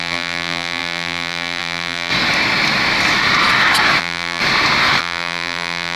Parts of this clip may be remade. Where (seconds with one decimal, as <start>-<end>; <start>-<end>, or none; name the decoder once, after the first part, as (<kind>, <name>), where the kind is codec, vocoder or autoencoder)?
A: 0.0-2.1 (vocoder, BigVGAN v2); 4.0-4.4; 5.0-6.0